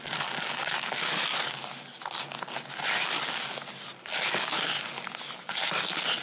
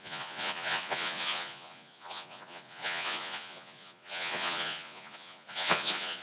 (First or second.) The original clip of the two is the first